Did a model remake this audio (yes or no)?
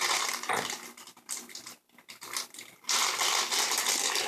no